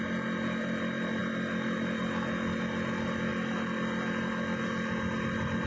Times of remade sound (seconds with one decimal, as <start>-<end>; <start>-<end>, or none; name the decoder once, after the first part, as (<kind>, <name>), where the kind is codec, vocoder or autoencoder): none